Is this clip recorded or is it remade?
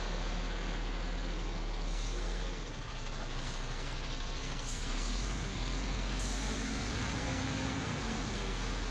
remade